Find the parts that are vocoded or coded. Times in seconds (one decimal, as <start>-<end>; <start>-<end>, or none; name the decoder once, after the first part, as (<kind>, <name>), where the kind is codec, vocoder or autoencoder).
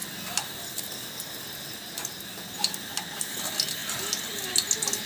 none